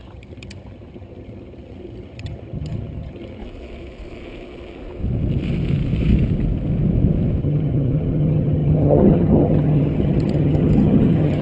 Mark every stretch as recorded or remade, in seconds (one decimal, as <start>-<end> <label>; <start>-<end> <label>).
0.0-3.4 remade; 3.4-7.4 recorded; 7.4-11.4 remade